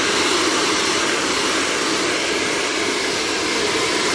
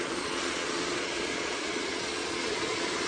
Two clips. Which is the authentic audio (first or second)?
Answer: first